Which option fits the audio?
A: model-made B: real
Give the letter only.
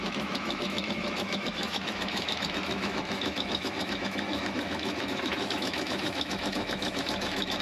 A